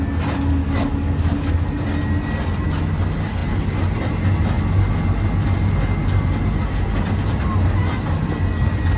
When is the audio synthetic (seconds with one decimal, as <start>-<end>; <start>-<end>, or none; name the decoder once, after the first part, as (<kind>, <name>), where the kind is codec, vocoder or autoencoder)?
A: 0.6-1.5 (codec, DAC)